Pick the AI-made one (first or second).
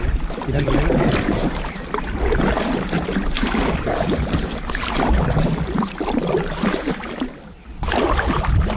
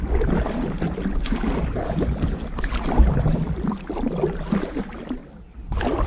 first